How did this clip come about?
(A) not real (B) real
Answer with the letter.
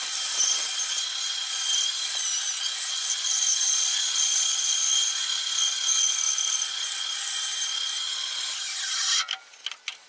B